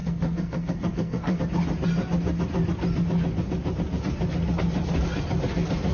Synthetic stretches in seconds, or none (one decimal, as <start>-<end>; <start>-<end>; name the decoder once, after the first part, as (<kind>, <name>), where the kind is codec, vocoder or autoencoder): 0.0-1.4 (codec, SNAC)